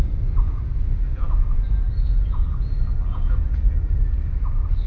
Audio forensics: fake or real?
real